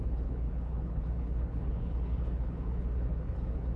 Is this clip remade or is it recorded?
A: remade